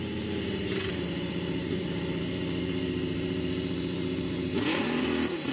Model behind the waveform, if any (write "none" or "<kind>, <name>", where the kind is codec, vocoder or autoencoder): vocoder, BigVGAN v2